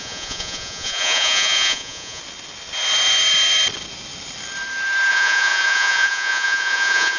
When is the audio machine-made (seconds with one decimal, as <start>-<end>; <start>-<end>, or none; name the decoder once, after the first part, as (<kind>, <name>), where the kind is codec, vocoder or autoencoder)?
0.0-2.2 (vocoder, Vocos); 5.1-7.2